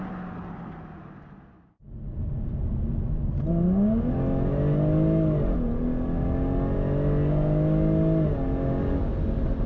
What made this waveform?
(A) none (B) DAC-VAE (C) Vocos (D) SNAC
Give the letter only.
A